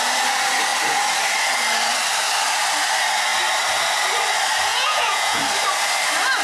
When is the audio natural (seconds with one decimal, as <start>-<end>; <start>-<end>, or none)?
0.0-4.7; 5.4-6.4